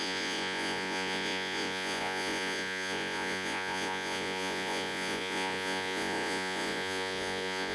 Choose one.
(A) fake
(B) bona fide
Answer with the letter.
A